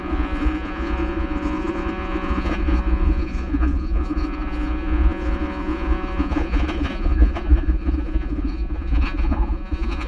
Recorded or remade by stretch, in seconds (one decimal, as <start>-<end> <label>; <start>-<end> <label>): 0.0-10.1 remade